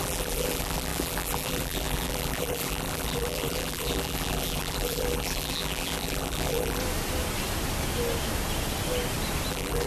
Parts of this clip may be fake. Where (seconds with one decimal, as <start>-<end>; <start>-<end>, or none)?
0.0-6.8; 9.5-9.9